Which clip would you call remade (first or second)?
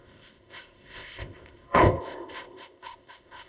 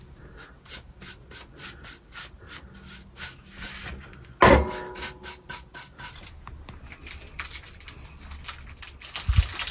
first